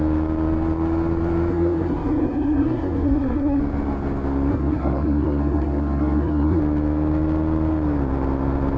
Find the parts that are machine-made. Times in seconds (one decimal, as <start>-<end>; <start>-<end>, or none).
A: 1.5-3.6; 4.5-6.6